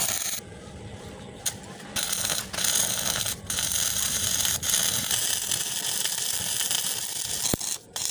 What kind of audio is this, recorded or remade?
recorded